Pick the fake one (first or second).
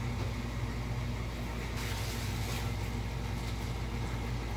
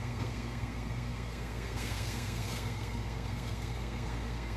second